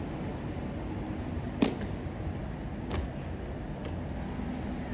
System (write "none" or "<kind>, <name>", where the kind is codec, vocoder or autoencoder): none